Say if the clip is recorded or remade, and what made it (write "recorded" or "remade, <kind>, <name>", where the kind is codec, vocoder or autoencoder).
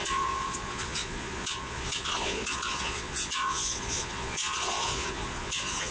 remade, vocoder, Vocos